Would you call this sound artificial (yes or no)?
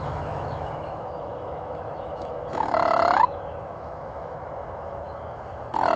yes